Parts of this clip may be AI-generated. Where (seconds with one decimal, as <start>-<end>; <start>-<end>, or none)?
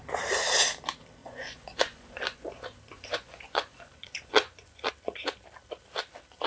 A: 1.2-4.9